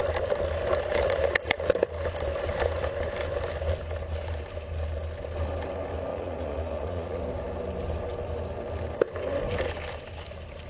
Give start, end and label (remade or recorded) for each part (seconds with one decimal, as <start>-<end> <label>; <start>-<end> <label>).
0.0-0.9 recorded; 0.9-1.7 remade; 1.7-6.1 recorded; 6.1-7.2 remade; 7.2-10.7 recorded